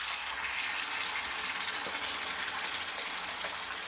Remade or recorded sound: recorded